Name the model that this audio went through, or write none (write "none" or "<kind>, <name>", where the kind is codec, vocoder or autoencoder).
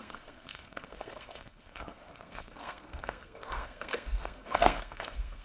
codec, SNAC